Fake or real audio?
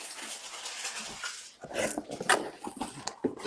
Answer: real